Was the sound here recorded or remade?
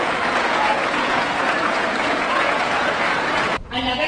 remade